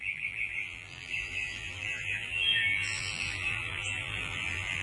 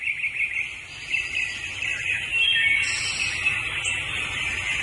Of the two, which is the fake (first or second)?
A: first